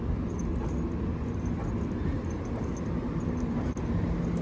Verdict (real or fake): real